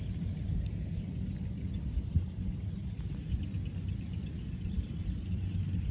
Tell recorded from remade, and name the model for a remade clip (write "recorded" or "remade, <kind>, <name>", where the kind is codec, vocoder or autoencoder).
recorded